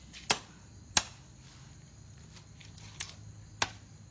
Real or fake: real